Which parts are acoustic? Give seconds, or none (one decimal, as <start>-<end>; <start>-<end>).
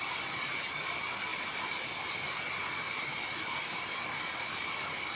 1.3-3.6